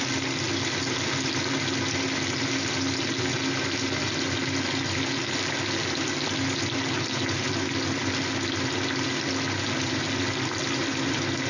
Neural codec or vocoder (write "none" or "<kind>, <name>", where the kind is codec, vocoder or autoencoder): none